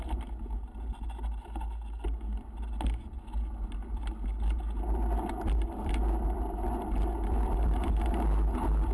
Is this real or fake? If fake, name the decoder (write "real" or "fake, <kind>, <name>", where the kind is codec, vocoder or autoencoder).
real